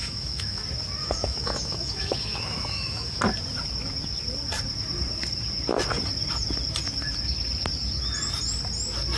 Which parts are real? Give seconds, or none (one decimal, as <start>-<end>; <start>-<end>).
0.6-1.0; 3.2-9.2